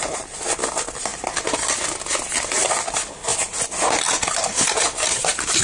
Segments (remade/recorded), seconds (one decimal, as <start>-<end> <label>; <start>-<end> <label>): 0.0-5.6 recorded

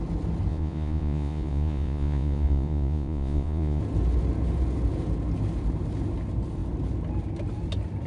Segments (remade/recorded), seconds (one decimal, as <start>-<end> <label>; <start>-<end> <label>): 0.0-0.5 recorded; 0.5-3.8 remade; 3.8-8.1 recorded